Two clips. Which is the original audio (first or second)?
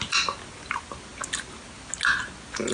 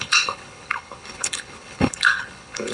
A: first